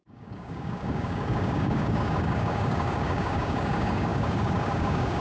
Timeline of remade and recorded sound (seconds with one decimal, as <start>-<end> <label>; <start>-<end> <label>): 0.0-5.2 remade